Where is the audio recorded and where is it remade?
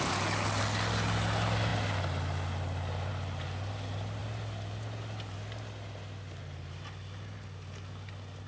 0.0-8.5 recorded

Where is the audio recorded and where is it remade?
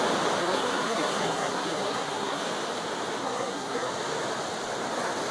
0.0-0.4 recorded; 0.4-2.4 remade; 2.4-3.2 recorded; 3.2-3.9 remade; 3.9-5.3 recorded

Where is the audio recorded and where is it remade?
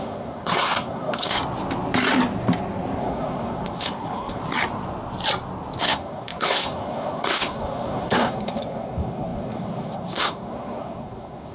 0.0-1.4 remade; 1.4-3.0 recorded; 3.0-4.4 remade; 4.4-5.8 recorded; 5.8-11.5 remade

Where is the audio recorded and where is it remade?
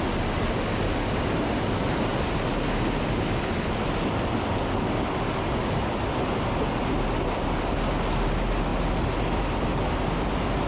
0.0-10.7 recorded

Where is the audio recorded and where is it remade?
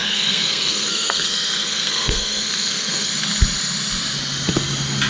0.0-3.1 remade; 3.1-5.1 recorded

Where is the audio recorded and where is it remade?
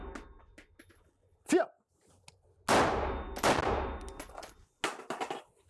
0.0-5.7 recorded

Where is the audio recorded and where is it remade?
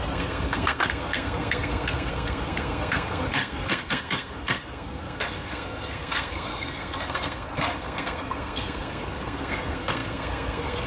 0.0-10.9 remade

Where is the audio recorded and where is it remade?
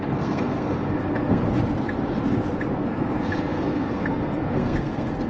0.0-1.4 remade; 1.4-2.9 recorded; 2.9-5.3 remade